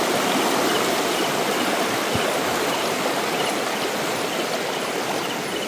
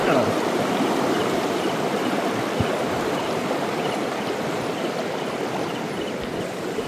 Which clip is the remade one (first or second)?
second